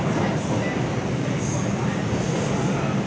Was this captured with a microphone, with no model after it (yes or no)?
yes